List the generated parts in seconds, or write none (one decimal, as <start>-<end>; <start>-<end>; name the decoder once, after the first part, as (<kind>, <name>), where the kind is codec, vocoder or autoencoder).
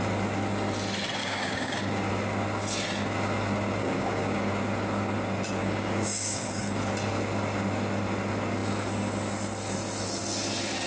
1.2-2.1 (codec, DAC); 3.8-4.5; 5.6-6.6